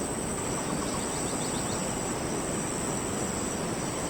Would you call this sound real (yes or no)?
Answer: yes